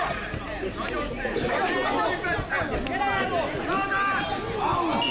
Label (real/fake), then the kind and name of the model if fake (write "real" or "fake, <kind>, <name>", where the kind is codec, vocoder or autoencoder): real